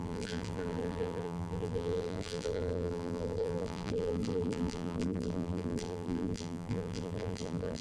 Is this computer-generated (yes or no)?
yes